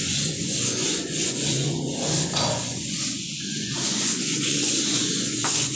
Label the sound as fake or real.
fake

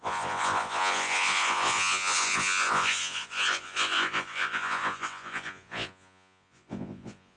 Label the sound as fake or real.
fake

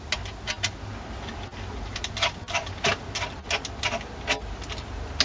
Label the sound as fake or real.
real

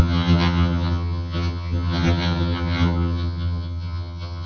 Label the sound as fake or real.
fake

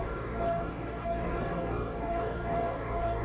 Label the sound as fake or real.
fake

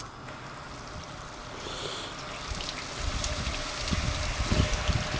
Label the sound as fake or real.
real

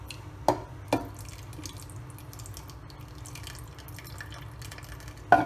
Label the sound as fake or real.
real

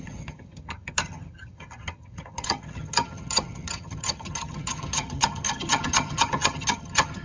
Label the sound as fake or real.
fake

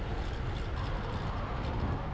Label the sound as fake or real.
real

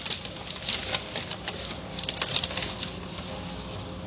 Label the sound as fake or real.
real